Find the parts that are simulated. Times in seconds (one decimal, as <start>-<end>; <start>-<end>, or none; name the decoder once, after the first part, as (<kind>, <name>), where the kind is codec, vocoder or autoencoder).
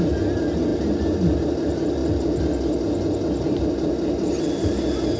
none